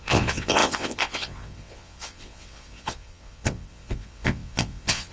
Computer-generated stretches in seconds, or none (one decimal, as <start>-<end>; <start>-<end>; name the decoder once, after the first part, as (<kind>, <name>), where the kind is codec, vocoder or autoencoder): 0.0-5.1 (vocoder, WaveNeXt)